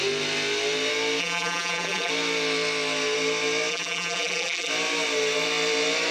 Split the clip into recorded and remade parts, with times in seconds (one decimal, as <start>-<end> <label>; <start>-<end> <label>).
0.0-1.2 recorded; 1.2-2.1 remade; 2.1-3.7 recorded; 3.7-4.7 remade; 4.7-6.1 recorded